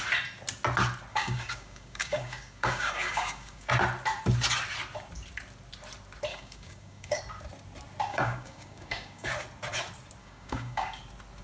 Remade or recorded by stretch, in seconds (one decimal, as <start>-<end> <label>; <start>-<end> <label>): 0.0-1.1 recorded; 1.1-3.7 remade; 3.7-6.3 recorded; 6.3-7.2 remade; 7.2-8.1 recorded; 8.1-9.3 remade; 9.3-10.2 recorded; 10.2-11.0 remade; 11.0-11.4 recorded